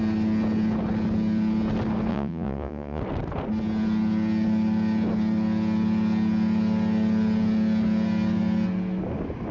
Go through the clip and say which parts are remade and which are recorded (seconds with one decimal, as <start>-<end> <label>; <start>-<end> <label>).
0.0-2.1 recorded; 2.1-3.0 remade; 3.0-9.5 recorded